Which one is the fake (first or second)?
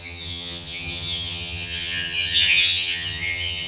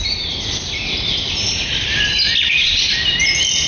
first